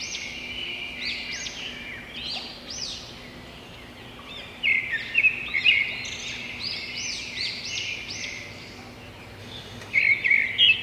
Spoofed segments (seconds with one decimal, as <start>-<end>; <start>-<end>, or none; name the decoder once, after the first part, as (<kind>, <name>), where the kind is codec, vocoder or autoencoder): 9.4-10.0 (autoencoder, DAC-VAE)